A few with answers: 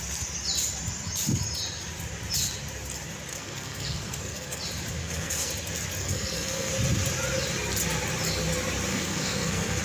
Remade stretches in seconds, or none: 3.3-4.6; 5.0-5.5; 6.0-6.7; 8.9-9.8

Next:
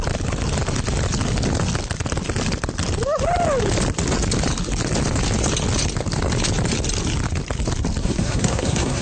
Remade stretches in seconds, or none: 8.0-9.0

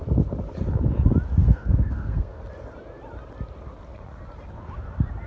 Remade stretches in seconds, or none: 1.4-2.4